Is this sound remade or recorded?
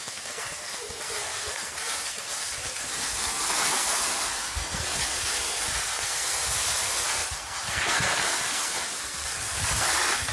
remade